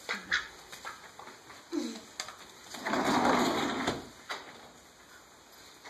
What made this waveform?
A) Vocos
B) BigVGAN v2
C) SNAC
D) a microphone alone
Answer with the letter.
D